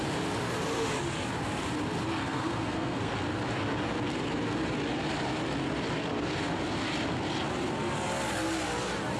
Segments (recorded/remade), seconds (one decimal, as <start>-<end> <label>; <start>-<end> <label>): 0.0-2.2 recorded; 2.2-3.1 remade; 3.1-9.2 recorded